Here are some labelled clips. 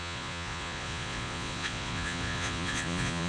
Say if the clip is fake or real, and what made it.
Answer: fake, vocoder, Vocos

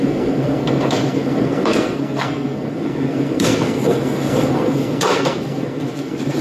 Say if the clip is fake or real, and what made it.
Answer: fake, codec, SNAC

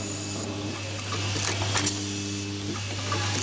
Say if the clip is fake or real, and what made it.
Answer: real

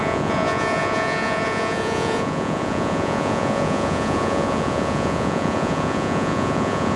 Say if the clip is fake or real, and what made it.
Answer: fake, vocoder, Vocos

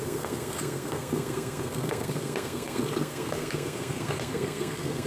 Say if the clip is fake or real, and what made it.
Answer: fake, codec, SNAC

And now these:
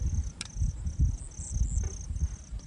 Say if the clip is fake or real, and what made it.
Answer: real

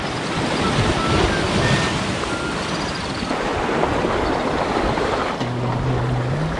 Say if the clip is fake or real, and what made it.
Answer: real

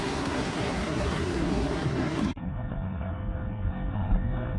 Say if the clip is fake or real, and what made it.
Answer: fake, codec, SNAC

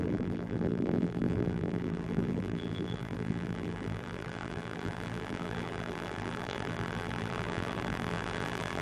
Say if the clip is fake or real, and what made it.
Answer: fake, vocoder, BigVGAN v2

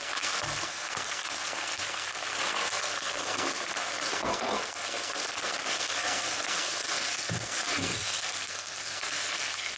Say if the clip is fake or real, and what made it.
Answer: fake, codec, SNAC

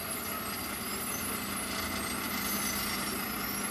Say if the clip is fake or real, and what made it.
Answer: real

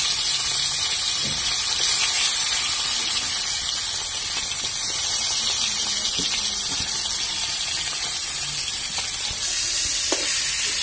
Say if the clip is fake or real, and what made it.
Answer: real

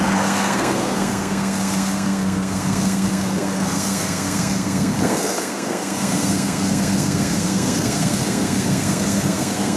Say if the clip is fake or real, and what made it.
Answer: fake, codec, SNAC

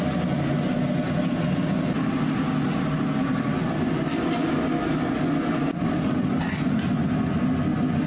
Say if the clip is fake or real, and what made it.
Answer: real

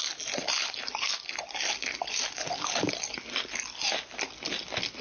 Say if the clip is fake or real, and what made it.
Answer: real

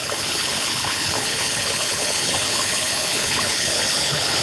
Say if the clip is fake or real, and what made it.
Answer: fake, codec, HILCodec